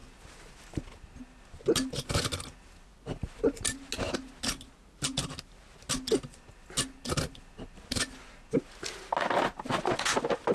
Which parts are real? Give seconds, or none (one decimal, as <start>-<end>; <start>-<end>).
0.0-10.5